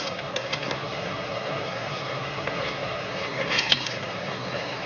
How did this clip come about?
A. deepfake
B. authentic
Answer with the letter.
A